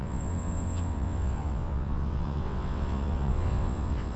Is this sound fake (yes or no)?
yes